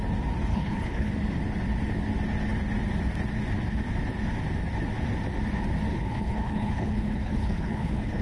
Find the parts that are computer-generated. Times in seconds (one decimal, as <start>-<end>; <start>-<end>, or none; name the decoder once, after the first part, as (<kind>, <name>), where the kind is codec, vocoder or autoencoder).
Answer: 0.5-1.1 (codec, HILCodec); 5.9-8.2